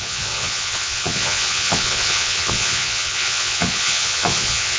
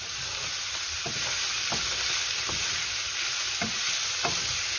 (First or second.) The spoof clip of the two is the first